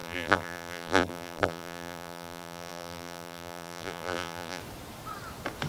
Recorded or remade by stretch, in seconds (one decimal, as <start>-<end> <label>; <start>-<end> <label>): 0.0-4.6 remade; 4.6-5.7 recorded